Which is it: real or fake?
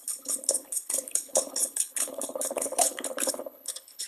fake